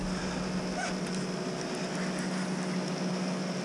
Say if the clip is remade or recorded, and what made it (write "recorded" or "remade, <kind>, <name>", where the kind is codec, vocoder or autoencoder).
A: recorded